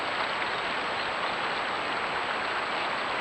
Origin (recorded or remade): recorded